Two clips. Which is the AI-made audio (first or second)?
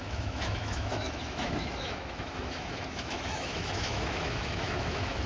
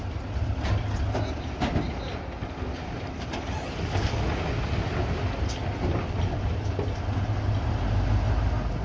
first